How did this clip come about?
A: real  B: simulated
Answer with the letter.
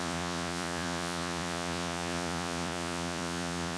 B